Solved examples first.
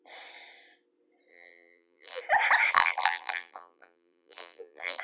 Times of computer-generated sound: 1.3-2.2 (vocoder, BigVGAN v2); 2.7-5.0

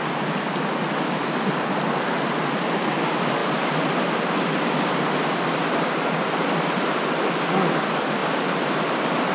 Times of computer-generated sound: 8.2-8.9 (vocoder, BigVGAN v2)

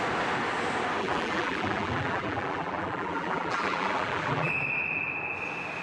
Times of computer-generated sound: 1.0-4.5 (vocoder, BigVGAN v2)

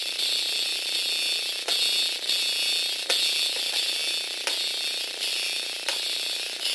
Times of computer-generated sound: 0.0-0.7 (vocoder, BigVGAN v2); 3.4-4.0; 5.3-6.7

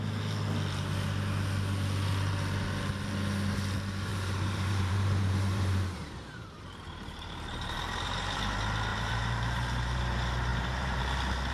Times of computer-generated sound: 4.1-8.5 (vocoder, BigVGAN v2); 8.9-10.0; 10.5-11.0

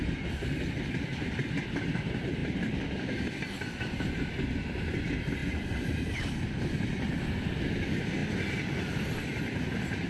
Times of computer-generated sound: 2.4-3.3 (vocoder, BigVGAN v2); 5.4-7.6; 8.2-9.6